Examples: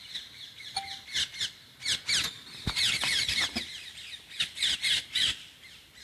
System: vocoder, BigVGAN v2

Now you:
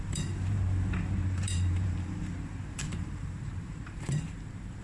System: vocoder, BigVGAN v2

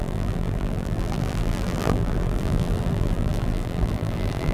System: vocoder, BigVGAN v2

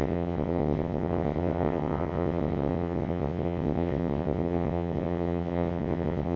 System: vocoder, WaveNeXt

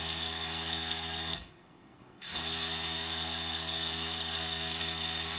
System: codec, SNAC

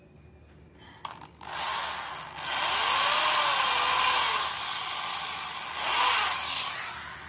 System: none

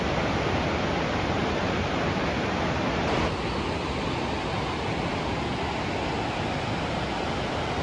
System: none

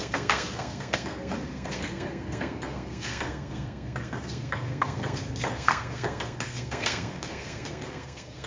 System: codec, SNAC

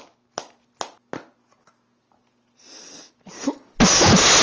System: none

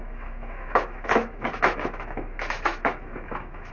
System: autoencoder, DAC-VAE